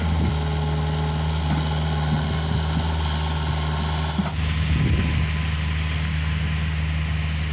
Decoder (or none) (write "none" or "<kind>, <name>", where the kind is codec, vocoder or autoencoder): none